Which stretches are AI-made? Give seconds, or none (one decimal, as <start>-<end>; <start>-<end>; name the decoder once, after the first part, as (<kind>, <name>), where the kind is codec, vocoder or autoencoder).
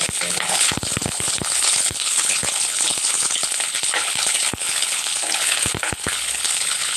0.0-7.0 (codec, HILCodec)